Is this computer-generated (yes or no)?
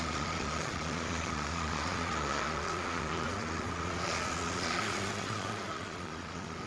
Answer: yes